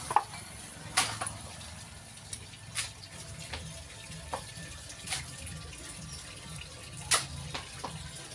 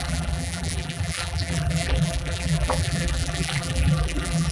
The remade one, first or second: second